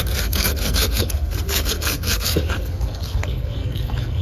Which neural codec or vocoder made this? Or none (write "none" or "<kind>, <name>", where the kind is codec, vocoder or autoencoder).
codec, SNAC